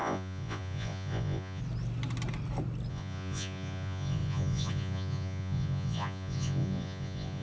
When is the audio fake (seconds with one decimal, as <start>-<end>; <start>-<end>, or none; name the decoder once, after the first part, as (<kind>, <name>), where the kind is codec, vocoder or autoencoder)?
0.0-1.6 (vocoder, Vocos); 2.9-7.4